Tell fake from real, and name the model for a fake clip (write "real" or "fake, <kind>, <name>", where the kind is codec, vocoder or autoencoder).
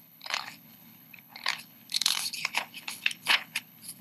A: fake, codec, HILCodec